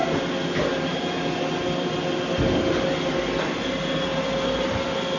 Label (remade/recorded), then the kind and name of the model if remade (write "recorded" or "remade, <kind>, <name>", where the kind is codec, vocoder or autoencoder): recorded